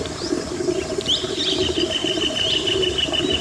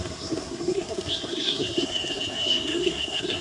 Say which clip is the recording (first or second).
first